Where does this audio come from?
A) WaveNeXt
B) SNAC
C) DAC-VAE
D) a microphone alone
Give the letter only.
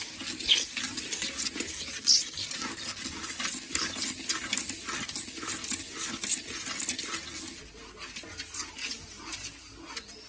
D